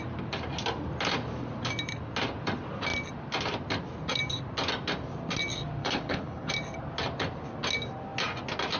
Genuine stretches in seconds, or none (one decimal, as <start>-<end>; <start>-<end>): 0.0-5.8; 6.5-8.8

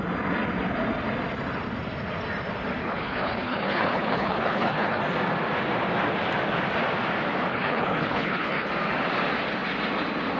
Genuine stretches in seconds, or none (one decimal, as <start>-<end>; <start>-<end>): 0.0-2.8; 5.0-7.5; 8.7-10.4